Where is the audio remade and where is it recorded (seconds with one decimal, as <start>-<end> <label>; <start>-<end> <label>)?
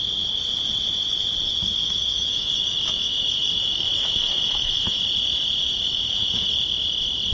0.0-1.6 recorded; 1.6-5.0 remade; 5.0-5.6 recorded; 5.6-6.5 remade; 6.5-7.3 recorded